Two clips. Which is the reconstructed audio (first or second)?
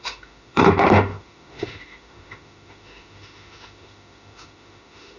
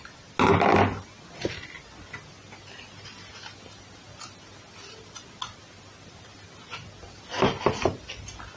first